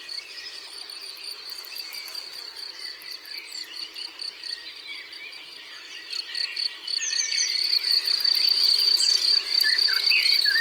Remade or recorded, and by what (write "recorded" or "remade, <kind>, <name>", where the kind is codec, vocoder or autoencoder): remade, vocoder, BigVGAN v2